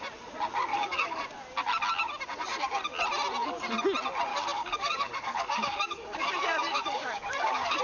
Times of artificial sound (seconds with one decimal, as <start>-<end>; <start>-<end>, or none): 0.7-1.2; 4.3-7.8

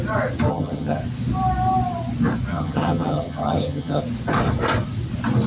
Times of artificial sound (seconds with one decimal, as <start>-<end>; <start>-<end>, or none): 0.5-1.0; 2.5-4.0

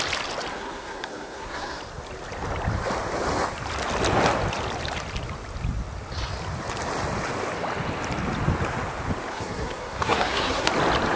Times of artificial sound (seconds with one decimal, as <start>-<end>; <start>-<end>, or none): 0.5-1.8; 9.3-10.7

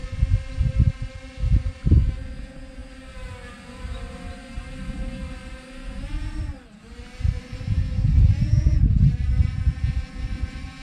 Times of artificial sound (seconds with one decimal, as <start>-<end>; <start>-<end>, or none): 0.0-0.9; 6.2-7.8

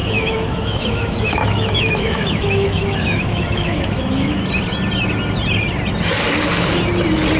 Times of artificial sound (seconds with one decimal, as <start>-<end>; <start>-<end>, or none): 0.0-4.4

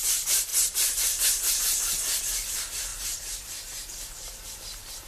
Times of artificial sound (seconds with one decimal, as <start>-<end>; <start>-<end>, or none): 0.5-1.6; 2.9-4.6